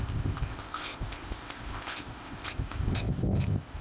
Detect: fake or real fake